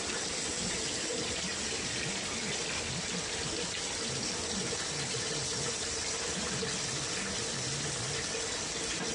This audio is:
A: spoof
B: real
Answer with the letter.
B